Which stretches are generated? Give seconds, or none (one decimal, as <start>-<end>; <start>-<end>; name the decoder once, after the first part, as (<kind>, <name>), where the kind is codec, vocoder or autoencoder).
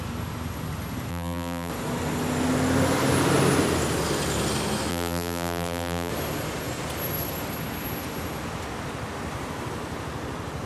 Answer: 1.1-1.7 (vocoder, BigVGAN v2); 4.9-6.1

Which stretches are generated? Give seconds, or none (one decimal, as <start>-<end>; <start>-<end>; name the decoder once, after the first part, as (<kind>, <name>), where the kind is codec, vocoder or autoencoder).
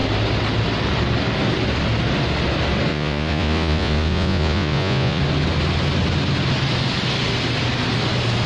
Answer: 2.9-5.2 (vocoder, Vocos)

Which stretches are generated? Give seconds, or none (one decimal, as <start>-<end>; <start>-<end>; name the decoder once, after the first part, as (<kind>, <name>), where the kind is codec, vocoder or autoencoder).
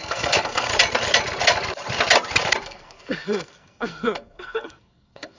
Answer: 0.0-0.7 (codec, SNAC); 2.6-5.4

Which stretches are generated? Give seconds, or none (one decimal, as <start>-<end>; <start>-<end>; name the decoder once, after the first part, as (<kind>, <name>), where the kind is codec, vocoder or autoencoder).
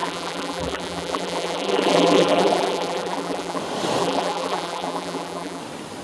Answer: 0.0-3.6 (vocoder, BigVGAN v2); 4.0-5.6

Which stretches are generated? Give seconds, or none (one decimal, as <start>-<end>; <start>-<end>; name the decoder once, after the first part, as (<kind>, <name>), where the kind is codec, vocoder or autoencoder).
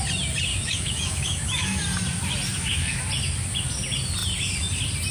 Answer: 0.5-1.8 (autoencoder, DAC-VAE); 2.5-3.0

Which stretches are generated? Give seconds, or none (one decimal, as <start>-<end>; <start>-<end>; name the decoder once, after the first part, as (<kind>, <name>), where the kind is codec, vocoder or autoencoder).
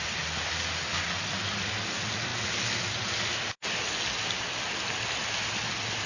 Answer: none